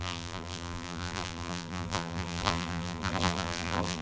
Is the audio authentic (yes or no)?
no